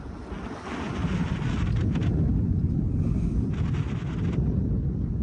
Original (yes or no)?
yes